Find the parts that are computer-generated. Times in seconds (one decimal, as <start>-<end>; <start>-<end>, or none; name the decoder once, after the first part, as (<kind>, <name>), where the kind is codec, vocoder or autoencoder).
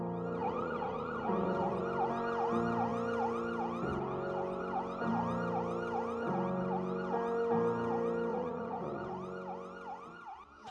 0.4-1.8 (vocoder, Vocos); 8.3-9.1